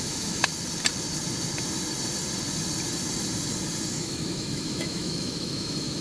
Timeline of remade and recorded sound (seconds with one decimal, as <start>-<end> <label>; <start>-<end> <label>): 0.0-0.5 remade; 0.5-3.9 recorded; 3.9-6.0 remade

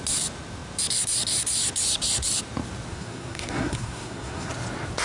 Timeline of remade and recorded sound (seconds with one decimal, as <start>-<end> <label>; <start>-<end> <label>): 0.0-2.9 recorded; 2.9-4.5 remade; 4.5-5.0 recorded